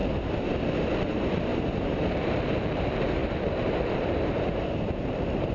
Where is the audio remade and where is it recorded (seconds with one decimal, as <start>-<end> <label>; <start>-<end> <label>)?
0.0-1.1 recorded; 1.1-1.5 remade; 1.5-2.1 recorded; 2.1-5.5 remade